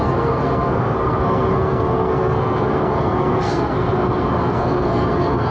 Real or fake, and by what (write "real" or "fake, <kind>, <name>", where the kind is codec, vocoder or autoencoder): fake, codec, SNAC